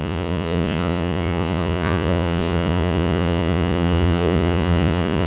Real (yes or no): no